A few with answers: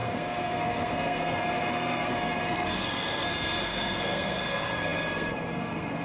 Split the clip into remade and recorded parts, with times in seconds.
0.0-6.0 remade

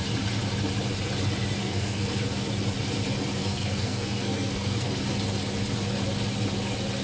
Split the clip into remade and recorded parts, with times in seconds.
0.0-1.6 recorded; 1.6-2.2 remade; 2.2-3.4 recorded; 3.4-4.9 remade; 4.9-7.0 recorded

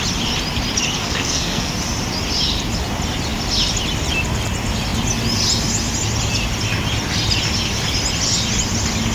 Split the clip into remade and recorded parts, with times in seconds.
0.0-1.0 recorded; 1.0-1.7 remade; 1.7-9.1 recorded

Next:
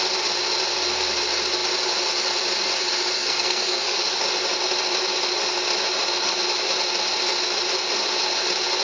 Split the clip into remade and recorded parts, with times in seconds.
0.0-3.2 recorded; 3.2-4.0 remade; 4.0-8.8 recorded

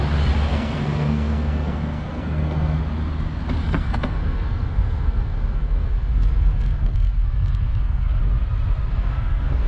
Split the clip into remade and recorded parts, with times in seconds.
0.0-0.5 recorded; 0.5-2.8 remade; 2.8-3.6 recorded; 3.6-8.2 remade; 8.2-8.9 recorded; 8.9-9.7 remade